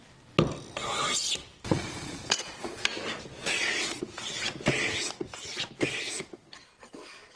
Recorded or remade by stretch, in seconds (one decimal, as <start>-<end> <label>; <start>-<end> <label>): 0.0-1.7 recorded; 1.7-2.8 remade; 2.8-3.4 recorded; 3.4-4.0 remade; 4.0-7.4 recorded